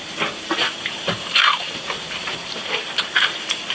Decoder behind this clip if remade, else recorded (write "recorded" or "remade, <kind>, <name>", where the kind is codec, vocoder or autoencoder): remade, vocoder, BigVGAN v2